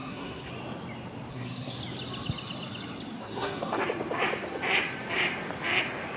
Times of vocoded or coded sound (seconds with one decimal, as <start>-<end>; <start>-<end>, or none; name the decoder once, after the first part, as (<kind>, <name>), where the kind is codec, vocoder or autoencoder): 0.0-0.5 (codec, SNAC); 1.3-1.8; 3.2-3.8

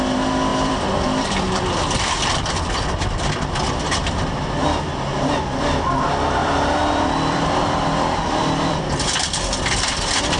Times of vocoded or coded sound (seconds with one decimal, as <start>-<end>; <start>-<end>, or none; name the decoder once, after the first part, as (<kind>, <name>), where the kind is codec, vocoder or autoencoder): 0.5-2.1 (vocoder, BigVGAN v2); 6.4-8.8

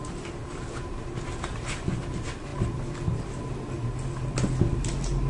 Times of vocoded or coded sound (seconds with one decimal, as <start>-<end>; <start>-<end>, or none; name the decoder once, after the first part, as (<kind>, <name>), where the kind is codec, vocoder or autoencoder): none